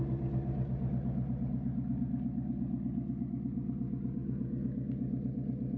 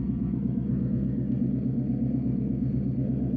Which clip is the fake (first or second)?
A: second